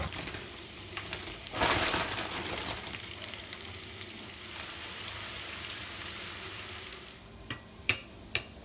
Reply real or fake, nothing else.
fake